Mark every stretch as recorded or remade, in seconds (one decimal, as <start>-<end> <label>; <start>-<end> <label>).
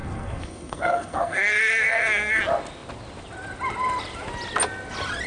0.0-2.4 remade; 2.4-5.3 recorded